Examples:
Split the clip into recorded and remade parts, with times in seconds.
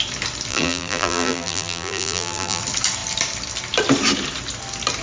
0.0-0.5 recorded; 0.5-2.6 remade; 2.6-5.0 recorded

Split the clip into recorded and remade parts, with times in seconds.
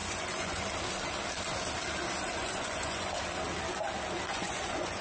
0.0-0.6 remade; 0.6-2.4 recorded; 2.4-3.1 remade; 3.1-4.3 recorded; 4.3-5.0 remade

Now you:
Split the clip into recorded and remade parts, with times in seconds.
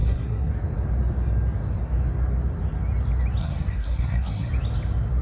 0.0-0.5 remade; 0.5-3.4 recorded; 3.4-4.5 remade; 4.5-5.2 recorded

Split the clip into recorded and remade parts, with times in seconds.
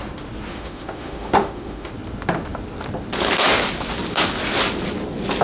0.0-0.5 recorded; 0.5-1.9 remade; 1.9-5.4 recorded